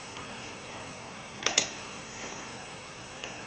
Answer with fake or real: fake